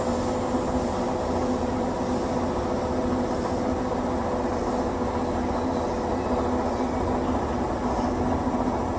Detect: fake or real real